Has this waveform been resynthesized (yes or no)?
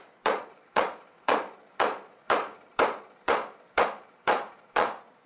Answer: yes